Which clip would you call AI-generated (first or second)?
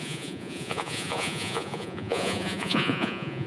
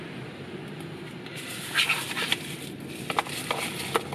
first